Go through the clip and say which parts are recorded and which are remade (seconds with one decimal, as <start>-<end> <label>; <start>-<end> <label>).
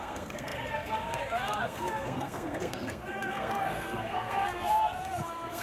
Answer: 0.0-5.6 remade